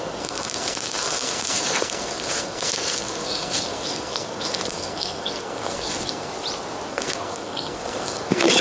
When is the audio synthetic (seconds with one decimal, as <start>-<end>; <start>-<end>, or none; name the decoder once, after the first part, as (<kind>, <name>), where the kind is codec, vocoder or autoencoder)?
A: 0.0-6.3 (codec, SNAC); 6.9-8.6